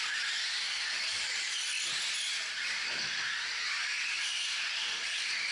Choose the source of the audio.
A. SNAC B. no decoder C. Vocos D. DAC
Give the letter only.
B